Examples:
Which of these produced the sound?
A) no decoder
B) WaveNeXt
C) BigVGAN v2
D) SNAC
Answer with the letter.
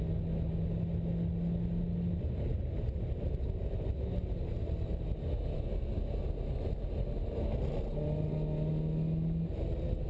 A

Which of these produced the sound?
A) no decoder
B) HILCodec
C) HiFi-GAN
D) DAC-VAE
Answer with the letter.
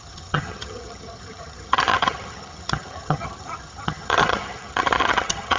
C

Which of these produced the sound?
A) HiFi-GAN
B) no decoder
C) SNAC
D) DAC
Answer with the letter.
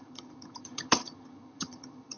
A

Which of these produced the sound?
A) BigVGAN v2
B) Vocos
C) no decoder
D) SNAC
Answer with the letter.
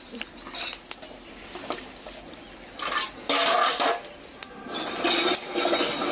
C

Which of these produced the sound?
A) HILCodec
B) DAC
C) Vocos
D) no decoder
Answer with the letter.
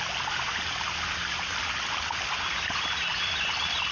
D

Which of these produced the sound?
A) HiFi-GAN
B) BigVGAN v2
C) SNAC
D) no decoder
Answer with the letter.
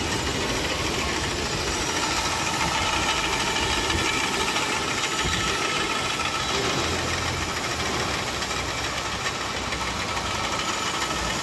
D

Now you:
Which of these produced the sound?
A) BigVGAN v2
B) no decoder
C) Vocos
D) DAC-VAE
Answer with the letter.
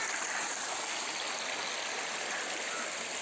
B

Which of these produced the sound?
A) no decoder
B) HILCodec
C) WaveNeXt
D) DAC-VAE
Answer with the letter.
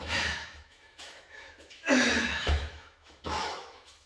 D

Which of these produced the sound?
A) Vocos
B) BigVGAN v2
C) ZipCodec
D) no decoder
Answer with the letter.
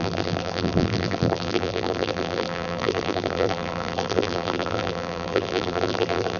B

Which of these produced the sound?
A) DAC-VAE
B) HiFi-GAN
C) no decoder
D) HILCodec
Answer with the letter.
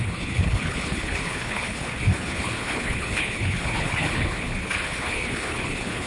D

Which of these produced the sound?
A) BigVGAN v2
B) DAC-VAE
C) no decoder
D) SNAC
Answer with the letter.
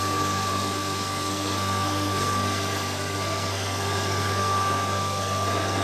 D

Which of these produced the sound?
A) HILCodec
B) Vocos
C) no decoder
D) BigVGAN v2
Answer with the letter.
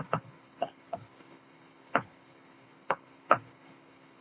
A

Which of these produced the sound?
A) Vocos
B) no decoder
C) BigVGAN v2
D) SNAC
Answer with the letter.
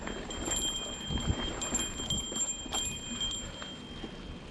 B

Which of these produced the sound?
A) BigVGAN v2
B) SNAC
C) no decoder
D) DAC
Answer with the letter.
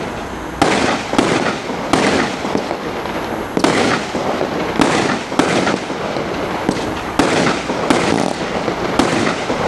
C